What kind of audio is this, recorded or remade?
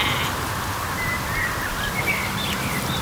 recorded